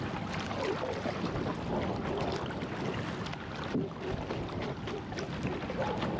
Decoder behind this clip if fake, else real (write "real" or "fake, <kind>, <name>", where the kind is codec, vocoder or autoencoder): real